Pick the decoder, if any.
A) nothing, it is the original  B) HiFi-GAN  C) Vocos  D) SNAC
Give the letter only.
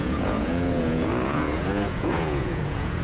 C